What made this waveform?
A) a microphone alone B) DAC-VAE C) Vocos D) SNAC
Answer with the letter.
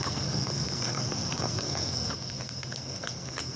D